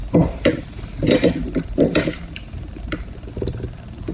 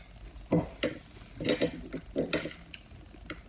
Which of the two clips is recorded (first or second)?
second